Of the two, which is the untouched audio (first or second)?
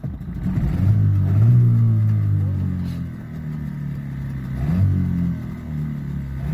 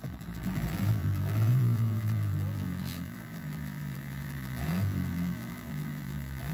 first